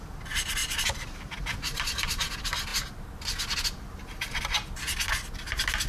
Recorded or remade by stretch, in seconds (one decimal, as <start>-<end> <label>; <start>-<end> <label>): 0.0-0.6 recorded; 0.6-2.3 remade; 2.3-5.9 recorded